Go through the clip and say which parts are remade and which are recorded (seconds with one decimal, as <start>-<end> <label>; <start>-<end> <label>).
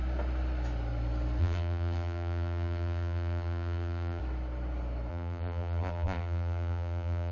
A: 0.0-1.4 recorded; 1.4-4.2 remade; 4.2-5.1 recorded; 5.1-7.3 remade